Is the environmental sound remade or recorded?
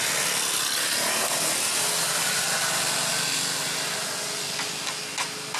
recorded